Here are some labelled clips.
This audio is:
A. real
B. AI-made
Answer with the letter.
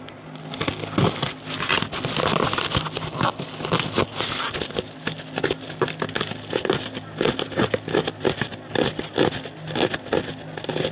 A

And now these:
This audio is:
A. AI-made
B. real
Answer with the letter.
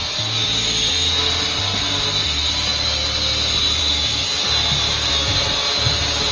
B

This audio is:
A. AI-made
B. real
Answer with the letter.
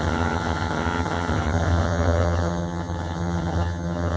A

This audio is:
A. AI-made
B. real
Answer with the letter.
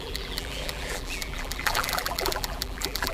A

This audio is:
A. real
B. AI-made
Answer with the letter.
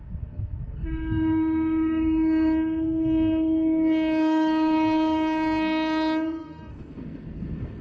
B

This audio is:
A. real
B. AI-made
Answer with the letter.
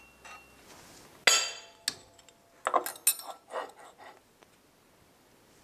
A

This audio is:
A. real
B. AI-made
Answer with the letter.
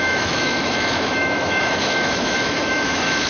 B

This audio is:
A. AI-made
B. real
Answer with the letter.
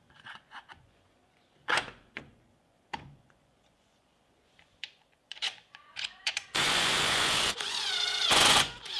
A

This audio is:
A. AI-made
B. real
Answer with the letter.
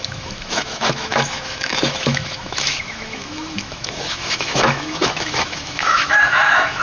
A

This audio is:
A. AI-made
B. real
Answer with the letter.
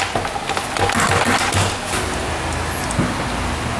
B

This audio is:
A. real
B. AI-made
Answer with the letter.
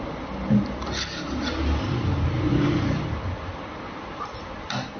A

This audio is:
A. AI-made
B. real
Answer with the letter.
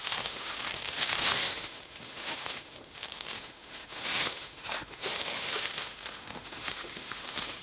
A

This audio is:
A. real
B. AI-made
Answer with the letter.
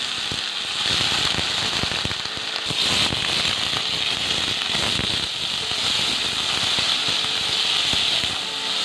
A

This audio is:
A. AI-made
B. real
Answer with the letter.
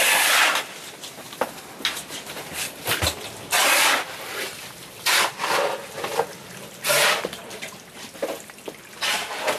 A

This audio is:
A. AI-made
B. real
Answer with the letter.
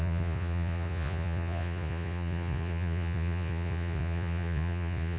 A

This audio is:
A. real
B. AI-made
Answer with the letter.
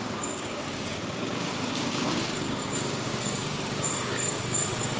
B